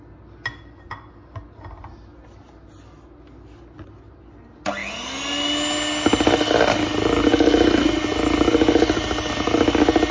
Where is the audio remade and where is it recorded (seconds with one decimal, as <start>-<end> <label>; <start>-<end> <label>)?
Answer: 0.0-10.1 recorded

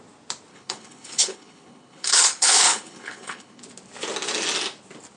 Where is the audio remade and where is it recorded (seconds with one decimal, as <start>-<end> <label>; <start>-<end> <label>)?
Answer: 0.0-0.5 recorded; 0.5-3.6 remade; 3.6-5.2 recorded

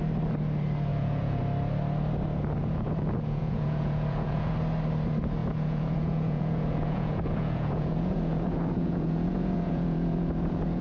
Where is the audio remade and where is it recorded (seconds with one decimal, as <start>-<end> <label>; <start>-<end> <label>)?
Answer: 0.0-0.9 recorded; 0.9-1.4 remade; 1.4-2.6 recorded; 2.6-4.5 remade; 4.5-5.4 recorded; 5.4-10.8 remade

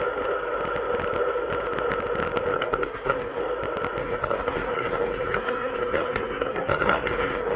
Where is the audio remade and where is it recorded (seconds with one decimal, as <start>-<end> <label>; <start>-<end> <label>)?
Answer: 0.0-2.5 recorded; 2.5-3.4 remade; 3.4-4.0 recorded; 4.0-7.6 remade

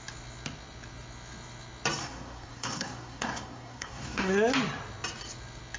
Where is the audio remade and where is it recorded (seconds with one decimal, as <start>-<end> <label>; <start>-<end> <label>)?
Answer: 0.0-2.0 recorded; 2.0-4.3 remade; 4.3-5.8 recorded

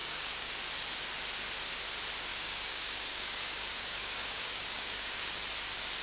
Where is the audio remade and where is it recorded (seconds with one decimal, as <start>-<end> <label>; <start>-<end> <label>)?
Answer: 0.0-0.5 remade; 0.5-2.3 recorded; 2.3-5.4 remade; 5.4-6.0 recorded

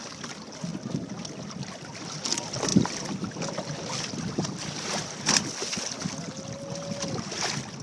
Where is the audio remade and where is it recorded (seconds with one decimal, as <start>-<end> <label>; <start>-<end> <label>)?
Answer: 0.0-7.8 recorded

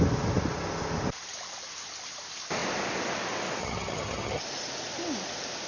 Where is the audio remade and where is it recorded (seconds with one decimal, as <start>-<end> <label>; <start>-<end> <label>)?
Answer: 0.0-3.6 recorded; 3.6-4.4 remade; 4.4-5.7 recorded